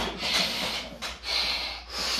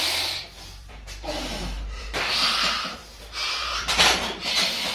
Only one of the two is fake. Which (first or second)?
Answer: second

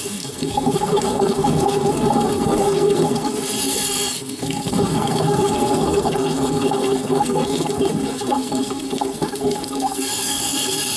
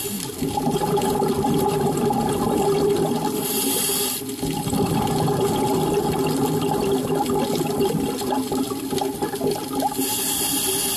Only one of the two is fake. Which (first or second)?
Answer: first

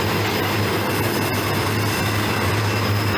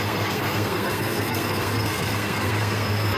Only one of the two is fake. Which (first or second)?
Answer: second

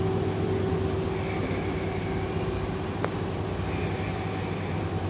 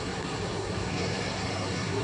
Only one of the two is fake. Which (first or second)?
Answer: second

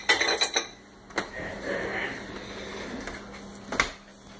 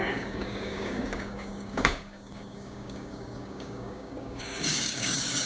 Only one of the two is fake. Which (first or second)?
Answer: second